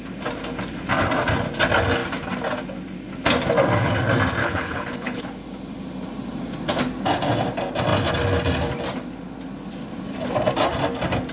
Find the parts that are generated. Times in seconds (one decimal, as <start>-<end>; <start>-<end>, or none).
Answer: 4.4-5.2